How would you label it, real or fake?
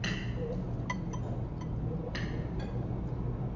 real